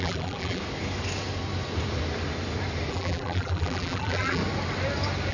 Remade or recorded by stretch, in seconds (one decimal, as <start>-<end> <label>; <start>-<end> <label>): 0.0-0.6 remade; 0.6-2.9 recorded; 2.9-4.4 remade; 4.4-5.3 recorded